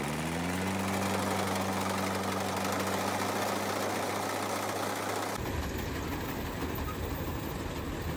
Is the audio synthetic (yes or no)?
no